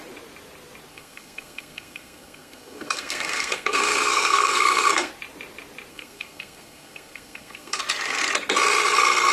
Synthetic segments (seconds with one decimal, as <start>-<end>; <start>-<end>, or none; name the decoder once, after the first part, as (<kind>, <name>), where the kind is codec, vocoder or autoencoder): 0.9-5.1 (codec, SNAC); 5.9-7.8